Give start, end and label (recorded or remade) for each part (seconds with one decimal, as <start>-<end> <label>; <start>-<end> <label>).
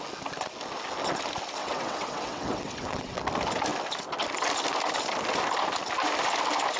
0.0-1.6 recorded; 1.6-3.2 remade; 3.2-6.8 recorded